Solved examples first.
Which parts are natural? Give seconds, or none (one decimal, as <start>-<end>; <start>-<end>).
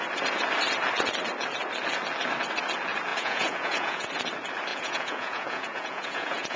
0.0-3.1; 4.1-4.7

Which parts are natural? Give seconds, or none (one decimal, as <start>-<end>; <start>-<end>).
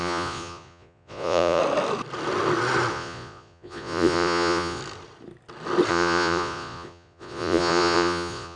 1.6-2.9; 4.8-5.9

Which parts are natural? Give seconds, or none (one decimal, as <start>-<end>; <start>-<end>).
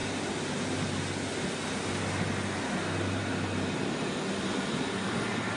0.0-5.6